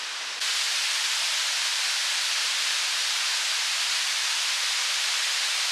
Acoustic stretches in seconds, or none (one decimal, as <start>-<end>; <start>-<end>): 0.0-5.7